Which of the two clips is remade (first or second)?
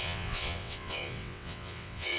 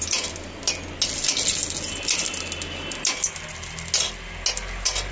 first